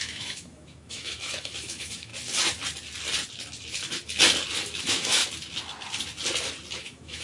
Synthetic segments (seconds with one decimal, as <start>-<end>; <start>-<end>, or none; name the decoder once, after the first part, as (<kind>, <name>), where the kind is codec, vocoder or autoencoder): 0.0-2.1 (autoencoder, DAC-VAE); 4.8-5.2; 6.8-7.2